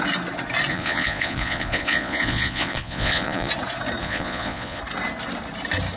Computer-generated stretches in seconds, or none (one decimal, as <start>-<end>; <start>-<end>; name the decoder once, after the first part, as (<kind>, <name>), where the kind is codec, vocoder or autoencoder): 0.7-3.5 (vocoder, Vocos); 4.0-4.8